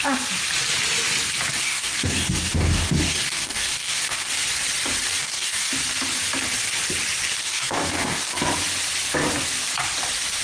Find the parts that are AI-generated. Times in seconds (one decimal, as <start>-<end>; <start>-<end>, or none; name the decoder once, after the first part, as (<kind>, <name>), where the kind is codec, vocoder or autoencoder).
1.6-4.3 (codec, DAC); 5.2-5.7; 7.4-8.4